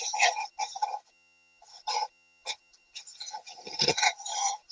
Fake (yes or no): yes